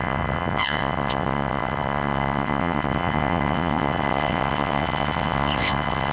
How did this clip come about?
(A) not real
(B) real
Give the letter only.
A